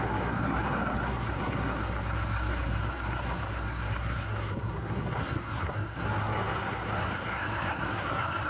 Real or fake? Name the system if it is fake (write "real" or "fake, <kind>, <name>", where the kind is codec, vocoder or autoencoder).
fake, codec, SNAC